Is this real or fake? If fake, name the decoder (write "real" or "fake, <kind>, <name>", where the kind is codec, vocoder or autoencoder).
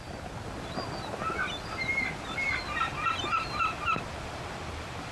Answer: fake, vocoder, BigVGAN v2